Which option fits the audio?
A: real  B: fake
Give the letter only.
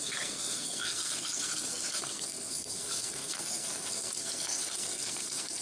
B